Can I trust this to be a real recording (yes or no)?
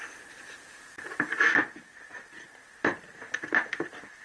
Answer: yes